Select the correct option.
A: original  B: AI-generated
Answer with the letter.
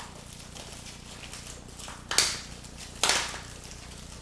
A